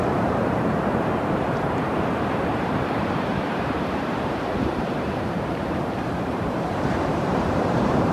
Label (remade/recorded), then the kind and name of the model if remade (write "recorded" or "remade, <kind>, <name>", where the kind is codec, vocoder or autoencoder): remade, vocoder, BigVGAN v2